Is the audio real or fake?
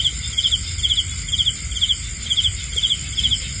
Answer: real